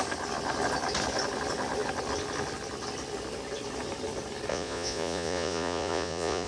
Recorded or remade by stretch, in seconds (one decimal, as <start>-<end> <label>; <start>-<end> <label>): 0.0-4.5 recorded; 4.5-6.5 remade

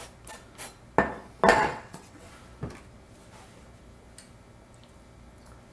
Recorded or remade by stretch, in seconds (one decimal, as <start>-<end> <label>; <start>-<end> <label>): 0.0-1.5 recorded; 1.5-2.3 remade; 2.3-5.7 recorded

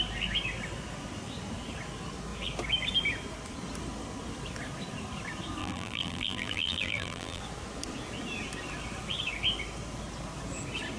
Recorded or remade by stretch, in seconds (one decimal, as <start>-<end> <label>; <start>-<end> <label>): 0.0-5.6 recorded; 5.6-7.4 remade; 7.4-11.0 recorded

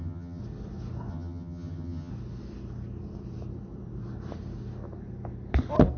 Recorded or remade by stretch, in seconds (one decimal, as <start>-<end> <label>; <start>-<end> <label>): 0.0-0.4 remade; 0.4-1.1 recorded; 1.1-2.1 remade; 2.1-6.0 recorded

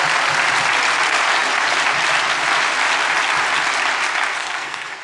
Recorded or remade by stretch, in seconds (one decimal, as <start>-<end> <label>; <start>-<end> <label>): 0.0-4.3 recorded; 4.3-5.0 remade

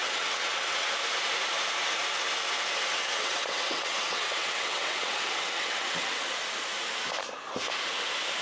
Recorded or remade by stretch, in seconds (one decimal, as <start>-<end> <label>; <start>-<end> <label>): 0.0-0.9 remade; 0.9-2.9 recorded; 2.9-6.2 remade; 6.2-8.4 recorded

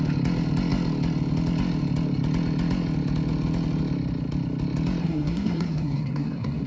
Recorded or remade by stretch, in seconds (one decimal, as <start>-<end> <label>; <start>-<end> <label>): 0.0-5.0 recorded; 5.0-6.7 remade

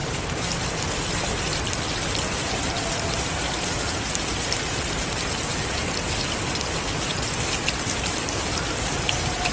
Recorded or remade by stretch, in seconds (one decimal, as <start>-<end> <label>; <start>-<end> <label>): 0.0-9.5 recorded